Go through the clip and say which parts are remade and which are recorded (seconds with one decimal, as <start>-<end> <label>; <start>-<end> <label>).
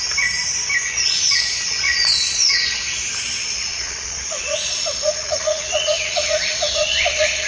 0.0-0.8 recorded; 0.8-2.8 remade; 2.8-3.4 recorded; 3.4-7.5 remade